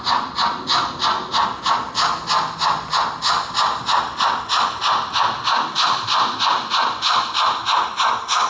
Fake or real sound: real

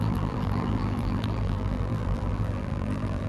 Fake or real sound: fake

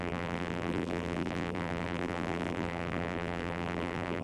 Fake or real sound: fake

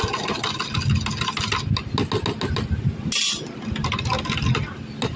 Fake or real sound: real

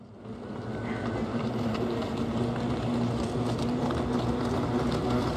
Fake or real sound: real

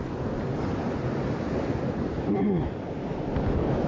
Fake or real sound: real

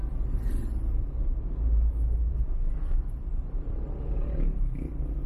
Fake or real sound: real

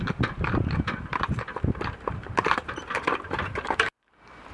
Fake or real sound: fake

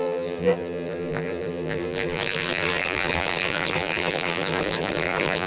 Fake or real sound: fake